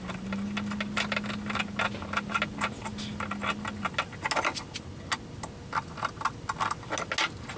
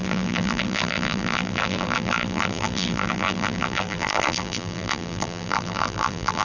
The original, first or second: first